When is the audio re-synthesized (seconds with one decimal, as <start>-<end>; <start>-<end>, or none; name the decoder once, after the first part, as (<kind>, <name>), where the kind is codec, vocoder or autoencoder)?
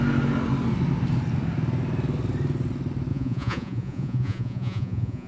3.1-5.3 (vocoder, Vocos)